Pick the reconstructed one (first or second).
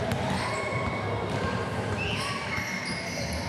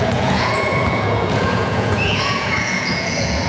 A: second